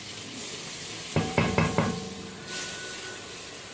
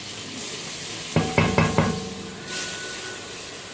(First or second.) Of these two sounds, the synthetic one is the first